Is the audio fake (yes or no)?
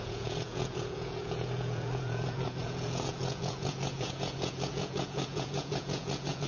yes